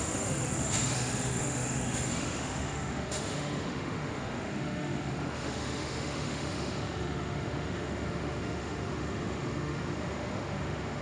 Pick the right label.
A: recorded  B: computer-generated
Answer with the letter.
B